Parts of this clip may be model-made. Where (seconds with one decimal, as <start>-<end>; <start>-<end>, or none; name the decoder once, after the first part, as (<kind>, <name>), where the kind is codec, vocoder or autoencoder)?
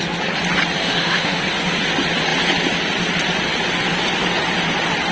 0.8-1.4 (autoencoder, DAC-VAE)